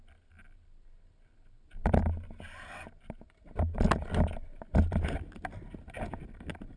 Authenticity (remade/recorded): recorded